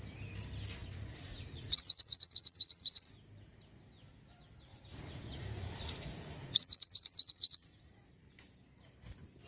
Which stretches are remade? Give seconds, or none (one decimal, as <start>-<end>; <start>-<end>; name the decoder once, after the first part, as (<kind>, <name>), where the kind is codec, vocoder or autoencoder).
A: 0.8-3.1 (vocoder, Vocos); 4.7-8.1